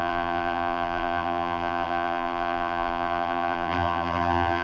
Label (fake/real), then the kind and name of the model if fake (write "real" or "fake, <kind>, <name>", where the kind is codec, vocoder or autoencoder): fake, vocoder, BigVGAN v2